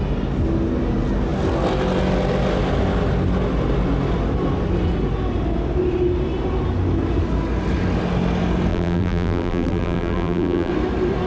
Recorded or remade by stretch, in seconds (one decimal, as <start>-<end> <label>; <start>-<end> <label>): 0.0-8.7 recorded; 8.7-10.7 remade; 10.7-11.3 recorded